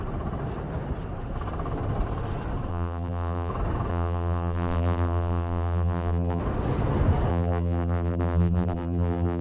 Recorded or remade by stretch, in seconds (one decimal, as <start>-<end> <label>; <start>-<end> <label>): 0.0-2.7 recorded; 2.7-3.5 remade; 3.5-3.9 recorded; 3.9-6.4 remade; 6.4-7.3 recorded; 7.3-9.4 remade